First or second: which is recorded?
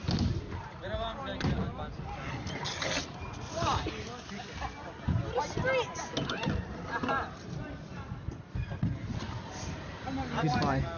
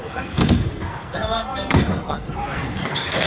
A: first